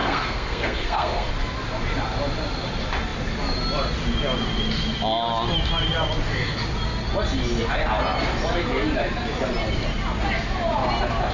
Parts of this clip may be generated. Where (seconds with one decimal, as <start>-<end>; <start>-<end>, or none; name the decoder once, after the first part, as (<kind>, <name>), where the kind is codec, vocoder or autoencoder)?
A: 0.0-1.3 (codec, SNAC)